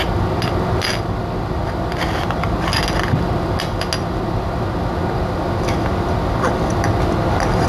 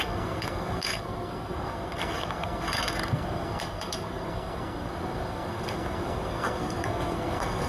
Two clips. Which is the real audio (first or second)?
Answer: first